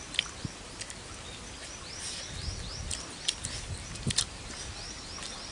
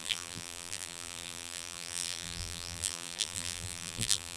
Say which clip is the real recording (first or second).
first